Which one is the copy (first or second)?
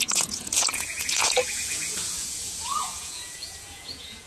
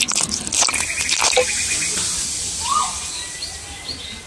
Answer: first